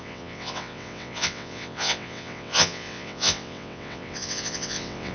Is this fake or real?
fake